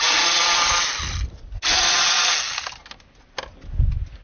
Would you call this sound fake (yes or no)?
no